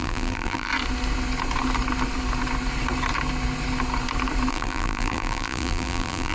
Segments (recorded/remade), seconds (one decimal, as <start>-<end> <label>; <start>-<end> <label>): 0.0-0.7 remade; 0.7-4.5 recorded; 4.5-6.3 remade